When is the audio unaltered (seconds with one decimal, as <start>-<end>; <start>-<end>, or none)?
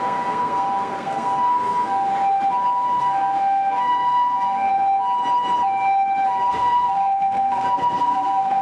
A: 2.1-3.0; 4.7-6.5